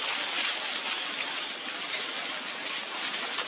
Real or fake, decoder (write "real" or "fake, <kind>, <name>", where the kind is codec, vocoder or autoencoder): real